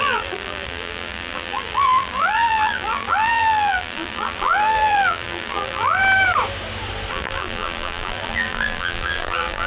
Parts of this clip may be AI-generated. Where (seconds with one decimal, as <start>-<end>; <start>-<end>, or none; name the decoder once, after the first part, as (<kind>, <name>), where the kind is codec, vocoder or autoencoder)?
0.0-6.0 (vocoder, BigVGAN v2); 7.1-9.7